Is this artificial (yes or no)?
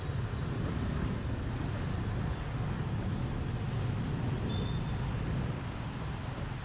no